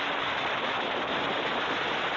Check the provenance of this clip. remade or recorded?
recorded